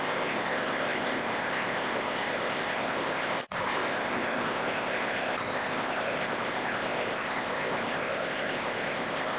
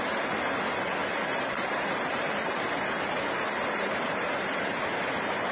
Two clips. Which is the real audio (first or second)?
second